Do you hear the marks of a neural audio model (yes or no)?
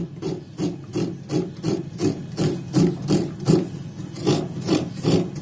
no